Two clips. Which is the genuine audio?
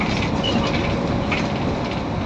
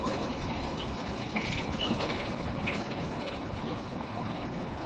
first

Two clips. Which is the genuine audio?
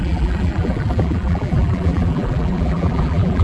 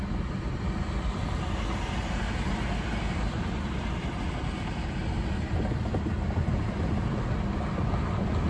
second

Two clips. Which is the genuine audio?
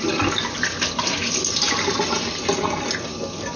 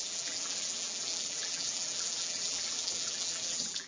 first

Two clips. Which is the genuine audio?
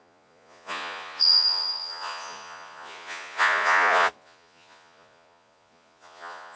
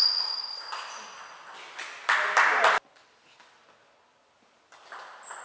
second